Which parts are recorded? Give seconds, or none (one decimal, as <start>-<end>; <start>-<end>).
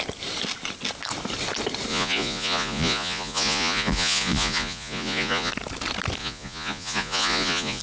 0.0-1.9; 5.5-6.2